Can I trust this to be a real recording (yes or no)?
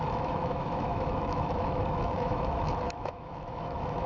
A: no